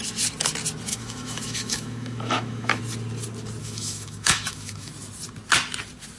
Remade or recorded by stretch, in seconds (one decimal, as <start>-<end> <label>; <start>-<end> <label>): 0.0-0.9 recorded; 0.9-2.8 remade; 2.8-3.6 recorded; 3.6-4.9 remade; 4.9-6.2 recorded